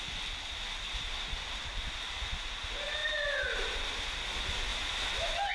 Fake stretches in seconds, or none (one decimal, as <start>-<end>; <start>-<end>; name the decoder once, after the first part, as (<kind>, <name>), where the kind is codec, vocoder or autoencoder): none